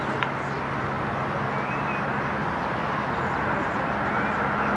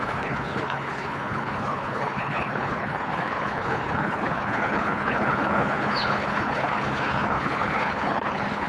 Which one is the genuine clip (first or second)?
first